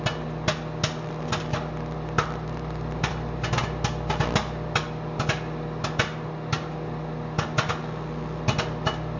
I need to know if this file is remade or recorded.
recorded